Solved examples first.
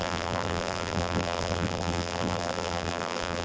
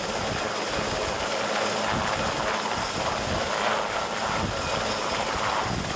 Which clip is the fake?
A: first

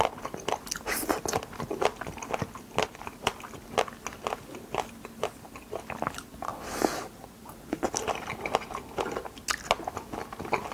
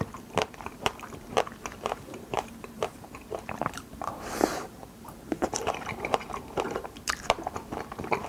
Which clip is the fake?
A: second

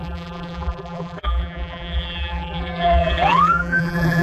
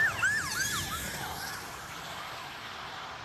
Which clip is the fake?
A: first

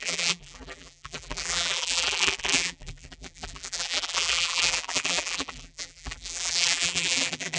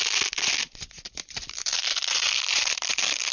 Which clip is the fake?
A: first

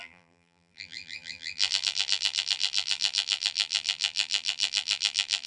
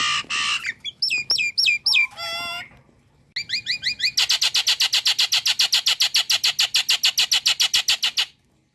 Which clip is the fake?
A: first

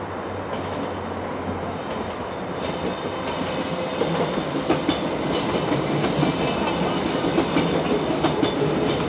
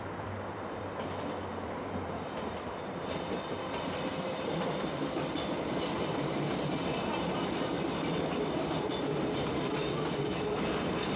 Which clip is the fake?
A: second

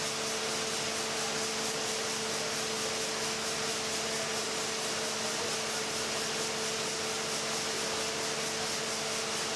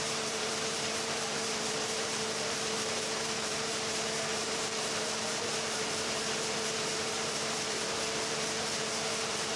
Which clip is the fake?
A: second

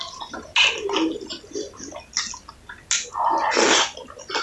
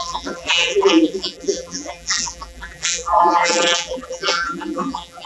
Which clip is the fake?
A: second